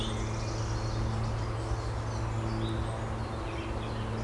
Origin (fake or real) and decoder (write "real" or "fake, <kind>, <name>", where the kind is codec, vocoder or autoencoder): real